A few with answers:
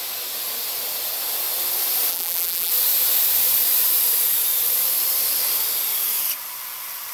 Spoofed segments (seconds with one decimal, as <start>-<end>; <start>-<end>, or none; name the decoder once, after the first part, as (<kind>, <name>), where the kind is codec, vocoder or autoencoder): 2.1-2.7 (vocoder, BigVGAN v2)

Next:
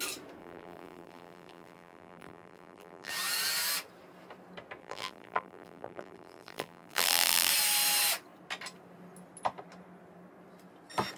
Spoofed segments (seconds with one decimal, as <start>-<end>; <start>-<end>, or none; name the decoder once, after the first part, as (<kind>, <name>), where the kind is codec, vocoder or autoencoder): 0.4-3.1 (vocoder, BigVGAN v2); 4.8-7.5

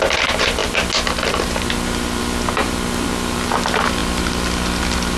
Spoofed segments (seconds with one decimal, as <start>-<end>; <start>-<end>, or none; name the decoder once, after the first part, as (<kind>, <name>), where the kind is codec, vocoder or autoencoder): none

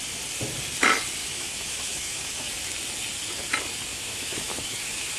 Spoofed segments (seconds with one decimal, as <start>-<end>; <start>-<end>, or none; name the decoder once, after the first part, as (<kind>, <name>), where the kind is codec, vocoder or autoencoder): 1.2-2.5 (autoencoder, DAC-VAE); 3.9-5.2